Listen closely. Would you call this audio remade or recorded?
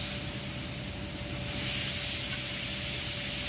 recorded